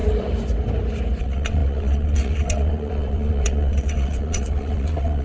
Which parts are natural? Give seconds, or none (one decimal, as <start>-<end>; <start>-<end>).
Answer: 0.0-1.2